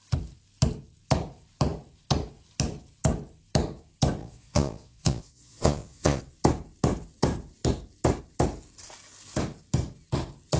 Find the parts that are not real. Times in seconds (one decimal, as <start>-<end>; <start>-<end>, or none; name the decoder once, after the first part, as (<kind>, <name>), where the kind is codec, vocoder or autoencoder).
4.2-6.2 (vocoder, Vocos)